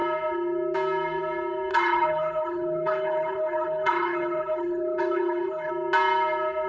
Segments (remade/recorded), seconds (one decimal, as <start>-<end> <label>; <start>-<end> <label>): 0.0-1.7 recorded; 1.7-5.7 remade; 5.7-6.7 recorded